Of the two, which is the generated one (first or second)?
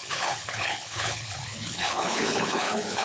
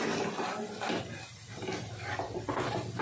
first